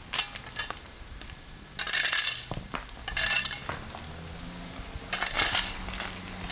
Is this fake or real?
real